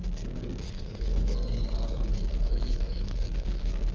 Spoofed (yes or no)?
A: yes